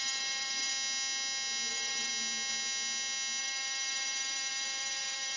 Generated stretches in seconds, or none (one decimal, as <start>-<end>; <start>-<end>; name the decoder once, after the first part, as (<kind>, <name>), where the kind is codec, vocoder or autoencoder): 0.0-0.7 (vocoder, BigVGAN v2); 1.7-2.1; 3.4-5.4